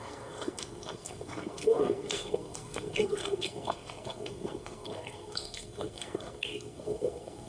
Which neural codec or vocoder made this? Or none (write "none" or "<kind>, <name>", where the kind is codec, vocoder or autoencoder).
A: codec, SNAC